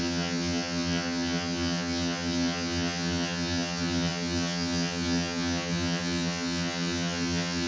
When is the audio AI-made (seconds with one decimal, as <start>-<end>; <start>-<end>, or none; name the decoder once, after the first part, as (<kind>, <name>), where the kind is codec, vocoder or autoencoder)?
0.0-7.7 (vocoder, HiFi-GAN)